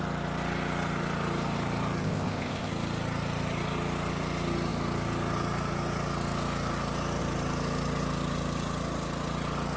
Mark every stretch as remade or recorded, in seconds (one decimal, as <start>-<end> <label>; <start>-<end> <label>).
0.0-2.0 recorded; 2.0-2.7 remade; 2.7-9.8 recorded